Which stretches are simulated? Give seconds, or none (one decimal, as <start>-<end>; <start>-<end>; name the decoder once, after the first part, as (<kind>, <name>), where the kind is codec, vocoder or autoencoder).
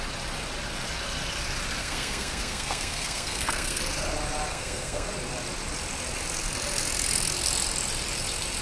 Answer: 1.8-3.8 (codec, SNAC); 4.5-5.1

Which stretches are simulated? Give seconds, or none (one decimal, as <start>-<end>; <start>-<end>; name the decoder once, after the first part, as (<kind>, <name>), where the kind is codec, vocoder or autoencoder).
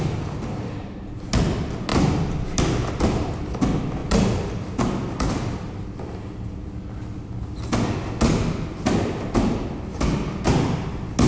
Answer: 1.9-2.6 (vocoder, BigVGAN v2); 4.0-5.8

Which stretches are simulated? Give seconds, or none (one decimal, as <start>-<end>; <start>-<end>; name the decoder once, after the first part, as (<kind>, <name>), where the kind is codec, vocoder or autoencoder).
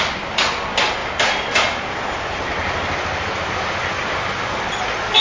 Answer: none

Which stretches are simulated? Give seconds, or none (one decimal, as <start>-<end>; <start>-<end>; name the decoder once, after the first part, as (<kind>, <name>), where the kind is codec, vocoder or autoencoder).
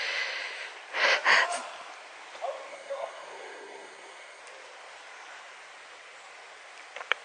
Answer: 2.7-4.4 (codec, SNAC)